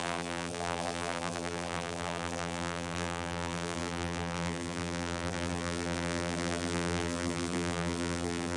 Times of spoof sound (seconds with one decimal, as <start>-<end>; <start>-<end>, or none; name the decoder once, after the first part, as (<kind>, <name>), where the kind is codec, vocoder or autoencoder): 0.0-8.6 (vocoder, BigVGAN v2)